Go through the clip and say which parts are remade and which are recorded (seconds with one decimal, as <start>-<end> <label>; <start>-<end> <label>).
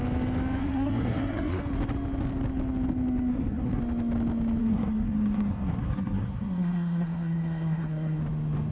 0.0-0.6 recorded; 0.6-1.6 remade; 1.6-3.3 recorded; 3.3-3.8 remade; 3.8-4.6 recorded; 4.6-8.2 remade; 8.2-8.7 recorded